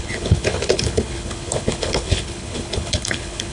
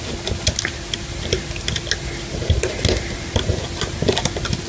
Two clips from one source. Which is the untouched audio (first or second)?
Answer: second